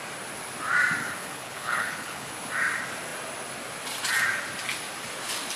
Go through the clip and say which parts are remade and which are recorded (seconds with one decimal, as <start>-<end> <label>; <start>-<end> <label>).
0.0-1.0 recorded; 1.0-2.3 remade; 2.3-5.6 recorded